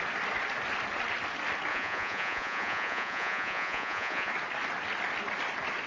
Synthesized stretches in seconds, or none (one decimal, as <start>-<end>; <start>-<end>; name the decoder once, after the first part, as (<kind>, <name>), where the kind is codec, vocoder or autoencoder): 1.7-4.3 (vocoder, Vocos)